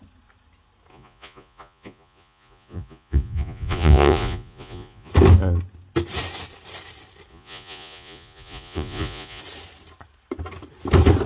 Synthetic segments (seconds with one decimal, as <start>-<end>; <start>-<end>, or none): 0.9-5.1; 7.3-9.4